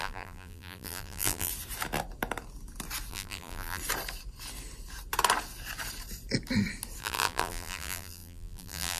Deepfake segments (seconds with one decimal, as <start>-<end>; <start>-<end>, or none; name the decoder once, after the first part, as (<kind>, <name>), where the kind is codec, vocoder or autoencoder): 0.0-1.5 (vocoder, BigVGAN v2); 3.1-3.8; 7.0-9.0